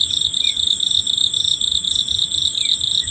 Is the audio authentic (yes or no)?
yes